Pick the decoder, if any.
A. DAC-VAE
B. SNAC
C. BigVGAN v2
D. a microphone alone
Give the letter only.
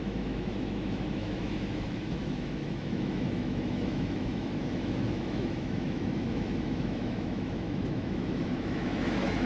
A